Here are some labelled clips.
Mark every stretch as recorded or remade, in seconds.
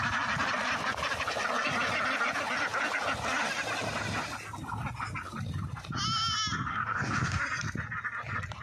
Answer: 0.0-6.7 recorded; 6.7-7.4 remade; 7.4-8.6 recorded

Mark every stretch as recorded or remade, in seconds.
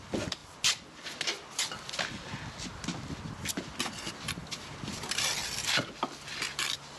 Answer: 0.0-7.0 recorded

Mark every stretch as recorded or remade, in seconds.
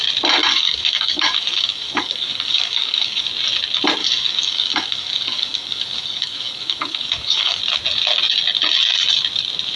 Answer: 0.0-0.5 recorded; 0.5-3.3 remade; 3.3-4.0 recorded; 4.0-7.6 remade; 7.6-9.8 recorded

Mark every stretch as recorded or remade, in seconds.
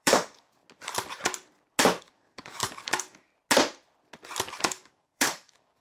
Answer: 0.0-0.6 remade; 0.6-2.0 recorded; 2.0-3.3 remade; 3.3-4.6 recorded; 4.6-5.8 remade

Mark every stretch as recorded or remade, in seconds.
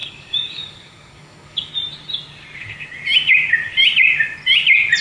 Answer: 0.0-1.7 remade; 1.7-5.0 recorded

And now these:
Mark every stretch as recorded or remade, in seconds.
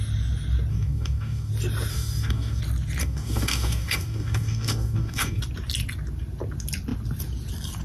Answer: 0.0-0.7 recorded; 0.7-1.5 remade; 1.5-1.9 recorded; 1.9-2.6 remade; 2.6-3.0 recorded; 3.0-5.4 remade; 5.4-7.8 recorded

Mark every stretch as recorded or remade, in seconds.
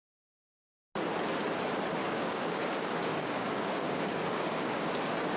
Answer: 0.0-2.0 recorded; 2.0-4.9 remade; 4.9-5.4 recorded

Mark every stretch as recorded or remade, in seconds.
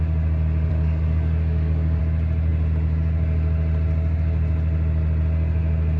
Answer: 0.0-0.7 recorded; 0.7-2.0 remade; 2.0-6.0 recorded